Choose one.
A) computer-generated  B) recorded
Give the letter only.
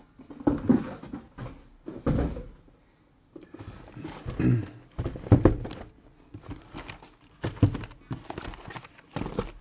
B